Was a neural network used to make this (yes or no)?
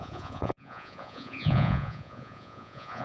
yes